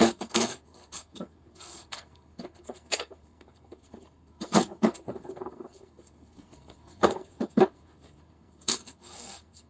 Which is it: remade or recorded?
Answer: remade